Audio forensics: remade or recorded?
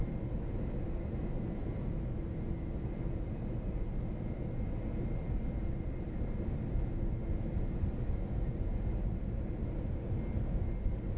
recorded